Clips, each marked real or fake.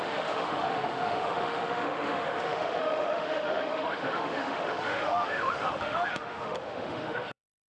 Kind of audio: fake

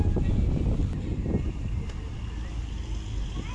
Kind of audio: real